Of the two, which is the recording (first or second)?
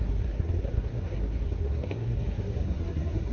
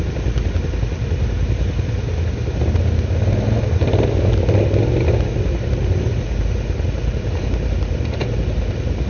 second